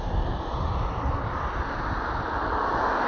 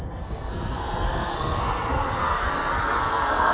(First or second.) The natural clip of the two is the first